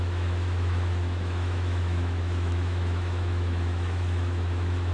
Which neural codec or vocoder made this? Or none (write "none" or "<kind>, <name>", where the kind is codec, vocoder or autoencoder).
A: autoencoder, DAC-VAE